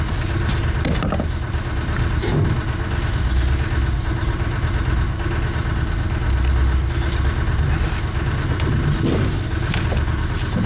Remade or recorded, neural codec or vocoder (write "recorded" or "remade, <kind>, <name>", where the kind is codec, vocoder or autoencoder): recorded